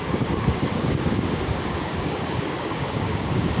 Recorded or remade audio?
remade